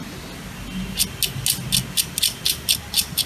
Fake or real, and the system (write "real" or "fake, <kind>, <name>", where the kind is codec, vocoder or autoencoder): real